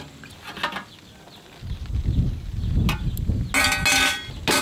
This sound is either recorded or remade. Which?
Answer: recorded